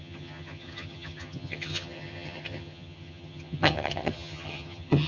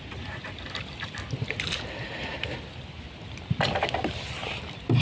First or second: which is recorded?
second